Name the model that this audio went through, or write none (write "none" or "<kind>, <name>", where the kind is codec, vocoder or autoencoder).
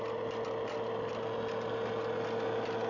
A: none